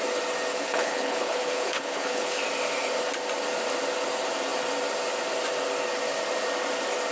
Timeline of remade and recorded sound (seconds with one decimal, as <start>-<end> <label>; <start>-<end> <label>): 0.0-0.5 recorded; 0.5-2.4 remade; 2.4-7.1 recorded